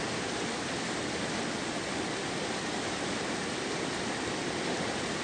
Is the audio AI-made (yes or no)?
no